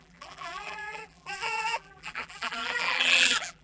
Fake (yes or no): yes